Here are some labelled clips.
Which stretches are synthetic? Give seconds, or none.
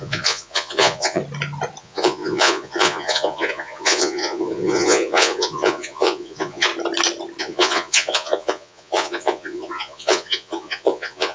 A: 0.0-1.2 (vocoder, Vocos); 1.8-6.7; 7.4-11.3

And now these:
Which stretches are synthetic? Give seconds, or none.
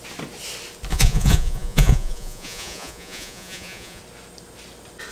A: 0.9-4.0 (vocoder, Vocos)